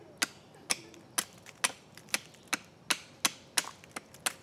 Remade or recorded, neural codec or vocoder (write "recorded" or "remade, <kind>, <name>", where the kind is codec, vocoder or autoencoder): recorded